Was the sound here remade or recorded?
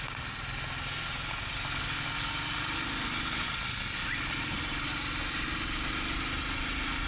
recorded